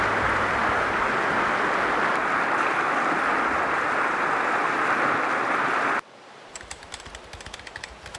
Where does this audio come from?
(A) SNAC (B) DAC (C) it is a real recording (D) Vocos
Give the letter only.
C